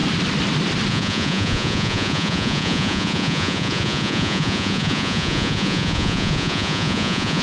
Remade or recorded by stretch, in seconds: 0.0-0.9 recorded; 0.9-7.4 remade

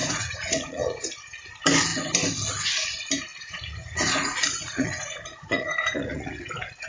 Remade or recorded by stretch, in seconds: 0.0-1.5 remade; 1.5-3.3 recorded; 3.3-6.3 remade; 6.3-6.9 recorded